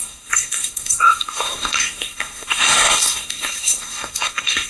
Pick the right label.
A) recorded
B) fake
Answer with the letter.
B